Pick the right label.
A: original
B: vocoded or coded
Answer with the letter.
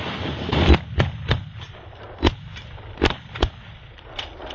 B